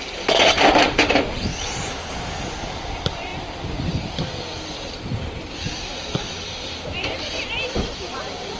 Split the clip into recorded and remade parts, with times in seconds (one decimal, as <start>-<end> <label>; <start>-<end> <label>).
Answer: 0.0-1.5 remade; 1.5-2.4 recorded; 2.4-3.3 remade; 3.3-5.9 recorded; 5.9-8.6 remade